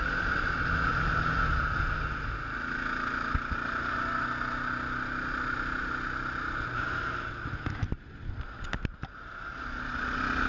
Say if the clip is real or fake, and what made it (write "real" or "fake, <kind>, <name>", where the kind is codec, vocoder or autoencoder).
real